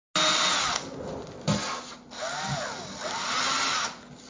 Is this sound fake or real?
real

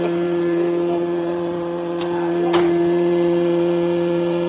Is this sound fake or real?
fake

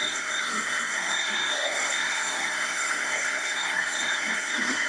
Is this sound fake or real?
fake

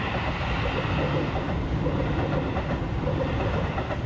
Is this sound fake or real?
real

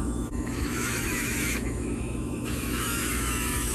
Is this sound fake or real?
fake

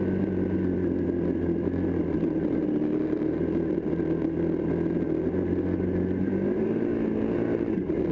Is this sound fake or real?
real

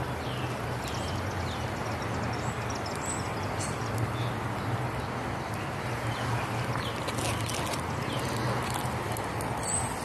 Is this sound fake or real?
real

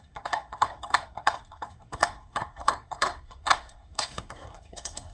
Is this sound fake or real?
fake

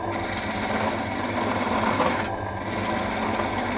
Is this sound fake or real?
real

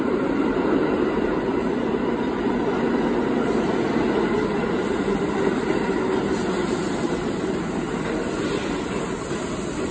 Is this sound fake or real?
real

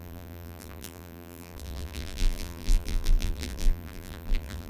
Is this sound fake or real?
fake